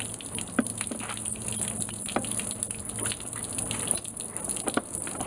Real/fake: real